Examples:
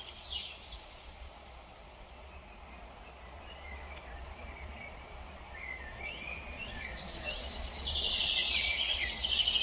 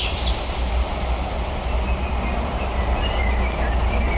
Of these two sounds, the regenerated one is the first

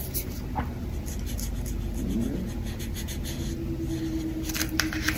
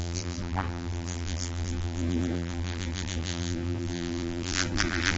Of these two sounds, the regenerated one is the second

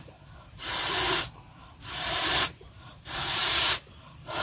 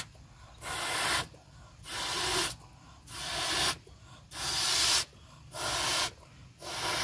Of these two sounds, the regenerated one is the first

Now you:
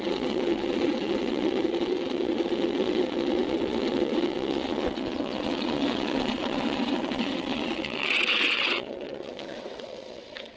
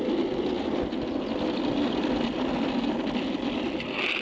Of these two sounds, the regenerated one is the first